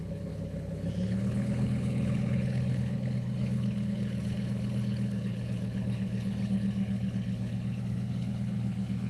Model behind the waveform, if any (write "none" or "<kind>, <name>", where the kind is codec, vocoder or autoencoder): codec, HILCodec